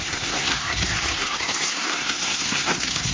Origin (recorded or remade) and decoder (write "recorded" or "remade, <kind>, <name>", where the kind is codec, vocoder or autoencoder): remade, codec, SNAC